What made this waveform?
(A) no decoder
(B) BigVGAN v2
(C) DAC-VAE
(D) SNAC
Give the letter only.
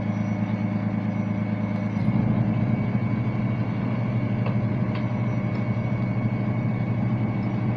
A